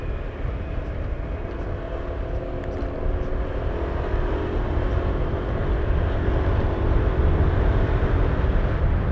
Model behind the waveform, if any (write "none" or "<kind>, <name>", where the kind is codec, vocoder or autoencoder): none